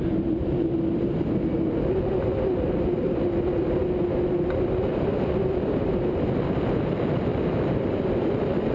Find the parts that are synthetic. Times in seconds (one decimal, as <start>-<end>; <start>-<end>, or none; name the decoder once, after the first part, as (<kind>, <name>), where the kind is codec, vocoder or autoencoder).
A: none